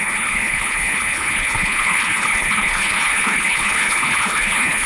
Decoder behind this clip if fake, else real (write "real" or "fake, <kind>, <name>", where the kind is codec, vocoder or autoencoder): fake, codec, HILCodec